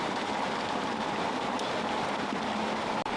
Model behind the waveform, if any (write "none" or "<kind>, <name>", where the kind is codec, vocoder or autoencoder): none